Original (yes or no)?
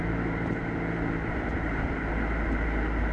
yes